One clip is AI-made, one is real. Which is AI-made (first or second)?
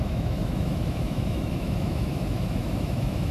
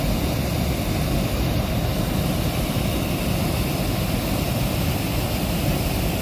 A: first